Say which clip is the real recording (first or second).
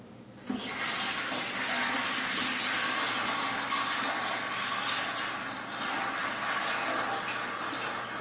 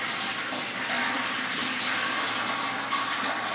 first